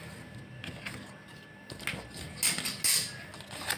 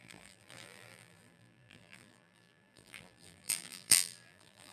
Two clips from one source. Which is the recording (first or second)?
first